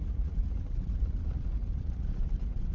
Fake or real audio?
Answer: fake